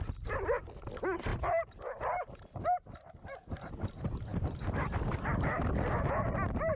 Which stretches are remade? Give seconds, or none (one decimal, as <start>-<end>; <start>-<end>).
4.3-5.3